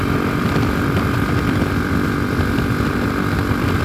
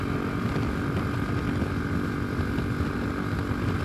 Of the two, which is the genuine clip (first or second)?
second